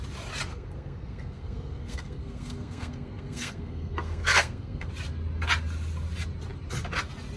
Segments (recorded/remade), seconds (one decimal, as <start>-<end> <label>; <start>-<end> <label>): 0.0-0.5 recorded; 0.5-4.9 remade; 4.9-7.4 recorded